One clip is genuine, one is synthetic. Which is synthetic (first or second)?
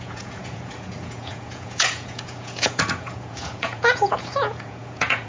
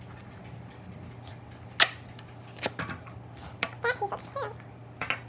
first